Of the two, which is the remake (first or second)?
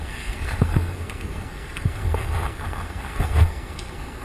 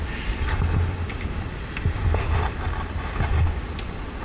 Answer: first